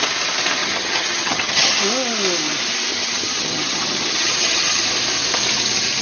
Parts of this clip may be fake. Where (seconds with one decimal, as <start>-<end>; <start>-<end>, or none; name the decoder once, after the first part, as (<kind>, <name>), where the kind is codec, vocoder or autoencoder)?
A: 0.6-1.8 (vocoder, HiFi-GAN); 2.9-4.8